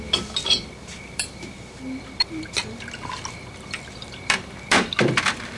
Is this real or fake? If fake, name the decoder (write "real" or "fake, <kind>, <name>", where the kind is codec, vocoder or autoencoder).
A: fake, vocoder, BigVGAN v2